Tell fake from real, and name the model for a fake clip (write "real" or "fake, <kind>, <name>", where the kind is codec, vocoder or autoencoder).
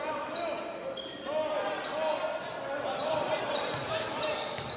real